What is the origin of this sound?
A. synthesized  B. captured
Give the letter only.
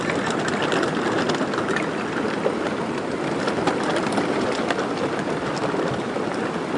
B